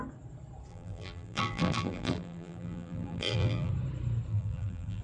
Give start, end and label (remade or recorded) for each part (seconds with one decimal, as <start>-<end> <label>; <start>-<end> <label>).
0.0-0.7 recorded; 0.7-3.7 remade; 3.7-4.3 recorded; 4.3-5.0 remade